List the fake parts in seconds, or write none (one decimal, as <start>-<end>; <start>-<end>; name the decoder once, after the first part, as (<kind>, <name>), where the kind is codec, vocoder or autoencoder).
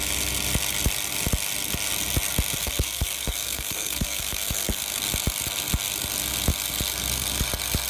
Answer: 2.6-4.8 (codec, SNAC)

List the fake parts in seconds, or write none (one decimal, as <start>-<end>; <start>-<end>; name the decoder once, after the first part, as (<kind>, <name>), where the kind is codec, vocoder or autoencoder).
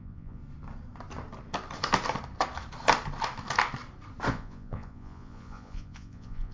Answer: 0.0-0.4 (vocoder, Vocos); 4.3-6.5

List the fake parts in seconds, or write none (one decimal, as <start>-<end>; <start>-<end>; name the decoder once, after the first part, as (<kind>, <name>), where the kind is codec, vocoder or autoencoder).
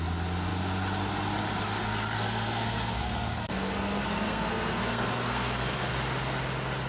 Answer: 1.8-5.9 (codec, SNAC)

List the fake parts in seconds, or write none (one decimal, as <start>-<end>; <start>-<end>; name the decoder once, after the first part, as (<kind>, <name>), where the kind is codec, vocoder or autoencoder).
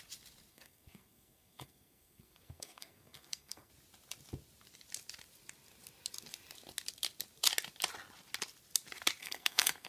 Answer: 0.5-3.7 (codec, SNAC); 9.2-9.9